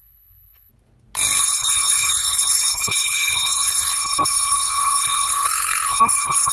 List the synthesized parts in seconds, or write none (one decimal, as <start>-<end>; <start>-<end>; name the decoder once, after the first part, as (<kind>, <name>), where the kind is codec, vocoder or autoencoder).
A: 0.0-0.7 (codec, HILCodec); 1.4-6.5